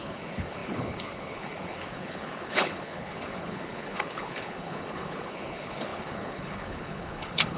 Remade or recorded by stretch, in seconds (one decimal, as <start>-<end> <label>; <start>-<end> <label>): 0.0-7.6 remade